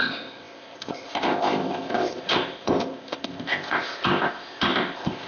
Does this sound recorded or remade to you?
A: remade